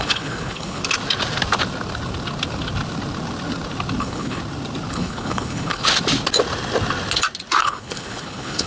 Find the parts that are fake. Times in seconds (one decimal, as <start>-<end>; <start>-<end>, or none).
0.0-0.8; 4.0-4.4; 4.9-5.8; 7.6-8.7